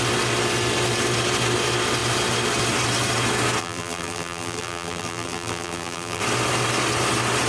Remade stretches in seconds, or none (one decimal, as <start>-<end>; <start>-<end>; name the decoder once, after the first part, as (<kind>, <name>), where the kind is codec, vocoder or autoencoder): 3.6-6.2 (vocoder, BigVGAN v2)